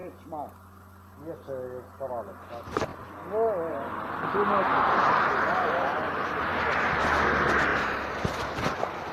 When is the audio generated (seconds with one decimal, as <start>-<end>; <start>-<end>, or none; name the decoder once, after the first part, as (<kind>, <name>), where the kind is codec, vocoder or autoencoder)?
4.7-7.0 (vocoder, BigVGAN v2); 7.7-8.6